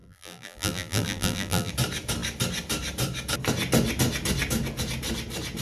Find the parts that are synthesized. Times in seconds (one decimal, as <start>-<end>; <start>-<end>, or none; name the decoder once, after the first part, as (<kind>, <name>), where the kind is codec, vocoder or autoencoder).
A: 0.0-1.7 (vocoder, BigVGAN v2)